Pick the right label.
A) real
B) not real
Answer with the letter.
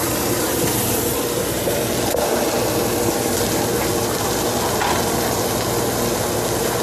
A